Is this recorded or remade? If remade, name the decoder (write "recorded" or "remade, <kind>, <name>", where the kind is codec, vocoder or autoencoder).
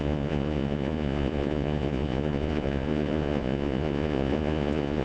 remade, vocoder, Vocos